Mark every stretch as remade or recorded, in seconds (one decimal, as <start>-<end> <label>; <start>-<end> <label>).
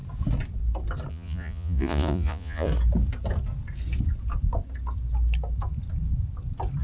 0.0-1.1 recorded; 1.1-2.7 remade; 2.7-6.8 recorded